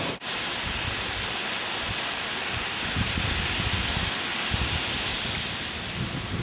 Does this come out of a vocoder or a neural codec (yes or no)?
no